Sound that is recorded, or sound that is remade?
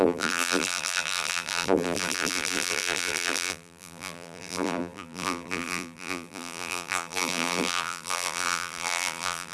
remade